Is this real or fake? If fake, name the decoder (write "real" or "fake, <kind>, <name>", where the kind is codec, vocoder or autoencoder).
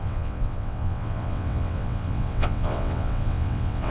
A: fake, vocoder, WaveNeXt